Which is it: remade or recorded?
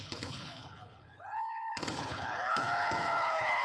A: remade